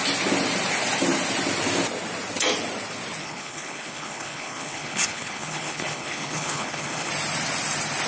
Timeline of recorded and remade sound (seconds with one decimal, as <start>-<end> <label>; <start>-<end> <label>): 0.0-3.2 recorded; 3.2-7.1 remade; 7.1-8.1 recorded